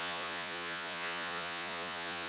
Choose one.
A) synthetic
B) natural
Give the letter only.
A